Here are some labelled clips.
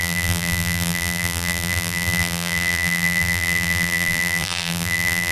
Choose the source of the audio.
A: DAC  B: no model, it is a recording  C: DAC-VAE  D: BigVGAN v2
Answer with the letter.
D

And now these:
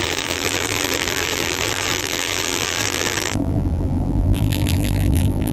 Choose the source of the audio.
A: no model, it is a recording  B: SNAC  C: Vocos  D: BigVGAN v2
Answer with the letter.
D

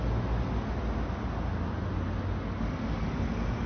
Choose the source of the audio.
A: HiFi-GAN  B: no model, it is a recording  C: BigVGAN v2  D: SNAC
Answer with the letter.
B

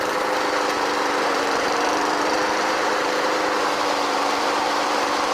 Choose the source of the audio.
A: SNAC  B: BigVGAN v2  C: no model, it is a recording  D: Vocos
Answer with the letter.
B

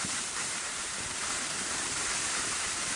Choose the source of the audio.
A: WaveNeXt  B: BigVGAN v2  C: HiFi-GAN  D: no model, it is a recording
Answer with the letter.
B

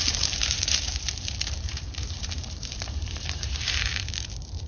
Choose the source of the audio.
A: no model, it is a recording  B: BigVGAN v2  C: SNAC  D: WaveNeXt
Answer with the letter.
B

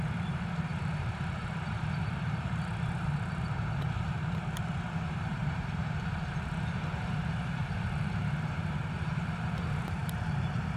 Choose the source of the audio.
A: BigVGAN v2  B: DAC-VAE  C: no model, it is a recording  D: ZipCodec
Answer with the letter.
A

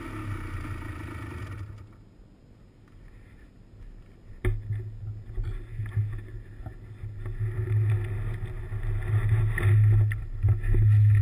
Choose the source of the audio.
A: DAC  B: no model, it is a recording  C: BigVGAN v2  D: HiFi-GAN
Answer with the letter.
B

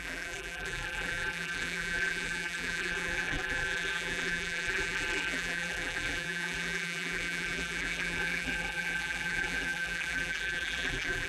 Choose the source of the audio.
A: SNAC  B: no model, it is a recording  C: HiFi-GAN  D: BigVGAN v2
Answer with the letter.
D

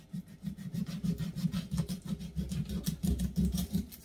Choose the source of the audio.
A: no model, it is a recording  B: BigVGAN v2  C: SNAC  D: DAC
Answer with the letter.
A